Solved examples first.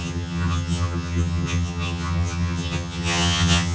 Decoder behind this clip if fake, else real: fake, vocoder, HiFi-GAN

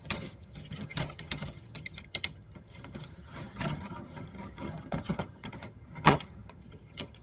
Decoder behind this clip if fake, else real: fake, vocoder, HiFi-GAN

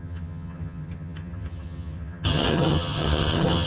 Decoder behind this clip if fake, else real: fake, vocoder, HiFi-GAN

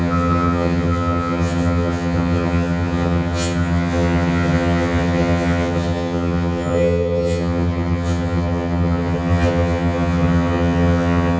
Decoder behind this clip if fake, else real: fake, vocoder, HiFi-GAN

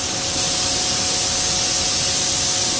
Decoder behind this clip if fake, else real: real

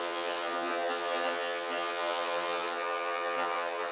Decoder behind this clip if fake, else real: fake, vocoder, HiFi-GAN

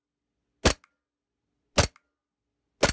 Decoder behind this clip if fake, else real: real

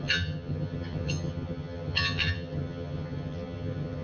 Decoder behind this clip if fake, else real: fake, vocoder, HiFi-GAN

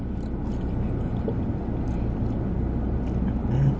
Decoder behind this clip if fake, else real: real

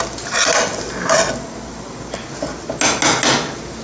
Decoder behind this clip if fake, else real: real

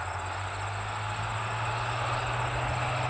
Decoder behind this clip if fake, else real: real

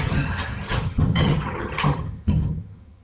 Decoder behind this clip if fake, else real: fake, vocoder, HiFi-GAN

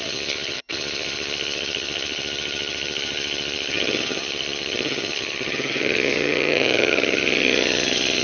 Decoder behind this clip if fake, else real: fake, vocoder, HiFi-GAN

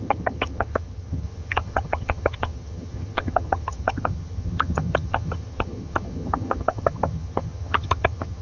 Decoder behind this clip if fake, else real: fake, vocoder, HiFi-GAN